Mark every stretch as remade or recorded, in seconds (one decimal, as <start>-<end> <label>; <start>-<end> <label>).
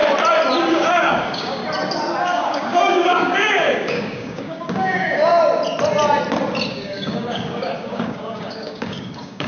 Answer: 0.0-0.7 recorded; 0.7-1.6 remade; 1.6-2.2 recorded; 2.2-5.3 remade; 5.3-6.7 recorded; 6.7-9.5 remade